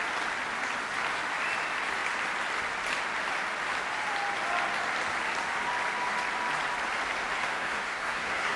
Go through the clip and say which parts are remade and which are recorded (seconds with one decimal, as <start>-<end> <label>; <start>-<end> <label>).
0.0-7.4 recorded; 7.4-8.6 remade